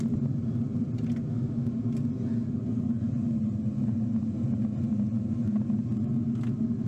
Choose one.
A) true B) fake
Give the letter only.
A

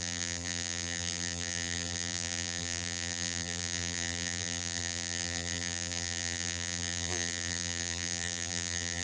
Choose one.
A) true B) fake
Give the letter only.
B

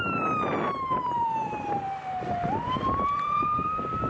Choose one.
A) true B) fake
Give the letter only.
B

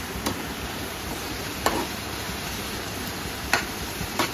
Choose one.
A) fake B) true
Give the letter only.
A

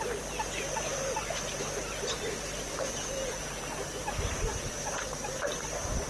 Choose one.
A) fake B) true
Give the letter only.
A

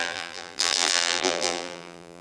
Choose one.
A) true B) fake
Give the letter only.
B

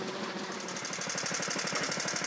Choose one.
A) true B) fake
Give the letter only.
B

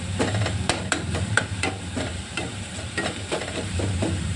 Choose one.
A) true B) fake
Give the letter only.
B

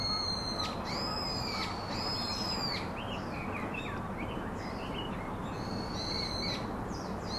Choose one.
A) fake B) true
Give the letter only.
B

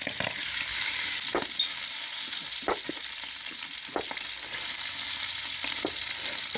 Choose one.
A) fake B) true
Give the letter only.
B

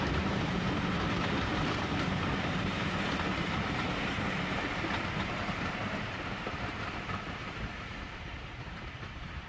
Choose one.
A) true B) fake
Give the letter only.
B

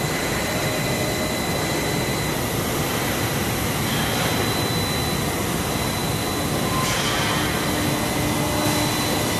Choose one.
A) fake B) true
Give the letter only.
B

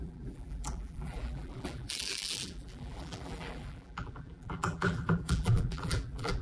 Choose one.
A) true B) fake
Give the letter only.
B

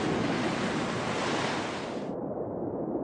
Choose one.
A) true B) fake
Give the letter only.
B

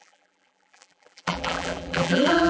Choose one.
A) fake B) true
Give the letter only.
A